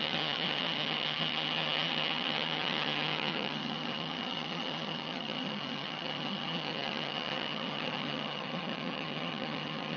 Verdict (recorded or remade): remade